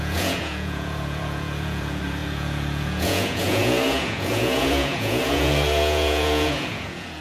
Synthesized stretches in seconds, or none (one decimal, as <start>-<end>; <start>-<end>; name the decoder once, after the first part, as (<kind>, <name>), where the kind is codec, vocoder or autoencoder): 0.0-7.2 (vocoder, Vocos)